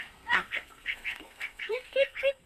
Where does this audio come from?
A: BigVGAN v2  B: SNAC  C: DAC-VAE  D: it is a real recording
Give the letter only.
B